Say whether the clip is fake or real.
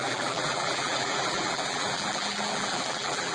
fake